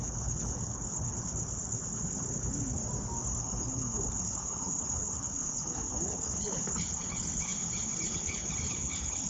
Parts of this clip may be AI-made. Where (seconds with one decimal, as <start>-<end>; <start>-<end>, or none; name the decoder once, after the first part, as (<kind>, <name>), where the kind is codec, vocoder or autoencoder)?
0.0-2.8 (codec, HILCodec); 3.4-9.3